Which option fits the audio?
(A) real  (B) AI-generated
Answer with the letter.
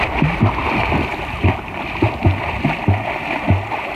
A